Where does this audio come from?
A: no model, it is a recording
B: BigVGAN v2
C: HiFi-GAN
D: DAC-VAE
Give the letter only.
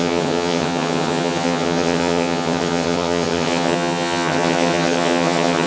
C